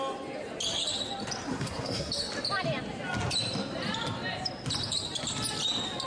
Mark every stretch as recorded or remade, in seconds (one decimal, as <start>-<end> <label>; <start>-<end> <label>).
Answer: 0.0-1.5 recorded; 1.5-2.1 remade; 2.1-6.1 recorded